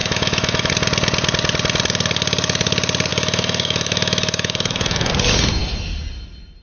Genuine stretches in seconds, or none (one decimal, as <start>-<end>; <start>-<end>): 0.7-3.1; 5.1-6.6